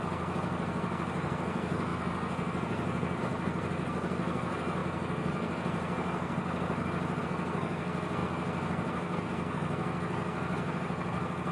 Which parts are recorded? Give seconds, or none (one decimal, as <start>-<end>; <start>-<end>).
none